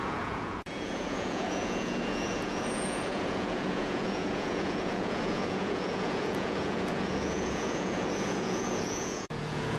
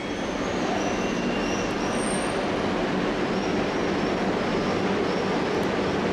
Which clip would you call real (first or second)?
second